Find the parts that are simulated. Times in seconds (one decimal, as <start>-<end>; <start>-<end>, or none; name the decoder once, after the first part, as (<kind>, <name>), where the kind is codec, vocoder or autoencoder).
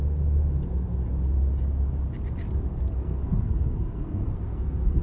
2.7-5.0 (codec, SNAC)